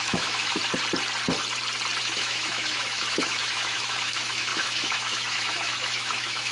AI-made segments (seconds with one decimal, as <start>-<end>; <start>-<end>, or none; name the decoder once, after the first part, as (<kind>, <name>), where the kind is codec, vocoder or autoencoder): 0.0-0.6 (autoencoder, DAC-VAE); 2.0-6.5